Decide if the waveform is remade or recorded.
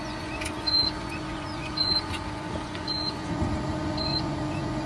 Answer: remade